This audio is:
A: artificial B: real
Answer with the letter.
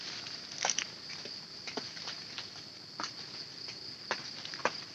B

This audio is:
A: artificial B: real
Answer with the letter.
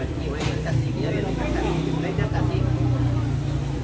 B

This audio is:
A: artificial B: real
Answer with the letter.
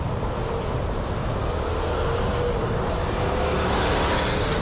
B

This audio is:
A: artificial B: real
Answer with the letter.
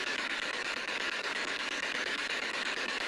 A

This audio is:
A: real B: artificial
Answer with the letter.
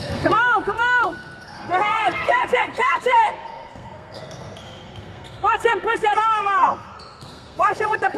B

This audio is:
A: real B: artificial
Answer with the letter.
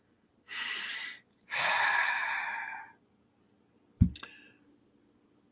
A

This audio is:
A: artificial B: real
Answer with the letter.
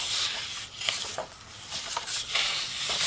B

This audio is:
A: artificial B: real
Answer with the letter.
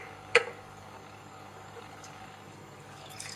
A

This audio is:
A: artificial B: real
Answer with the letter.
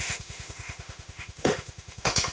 A